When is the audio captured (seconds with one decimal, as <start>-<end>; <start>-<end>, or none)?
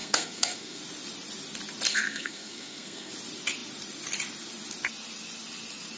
0.8-1.9; 3.1-6.0